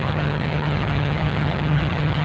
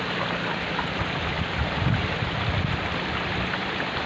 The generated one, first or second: first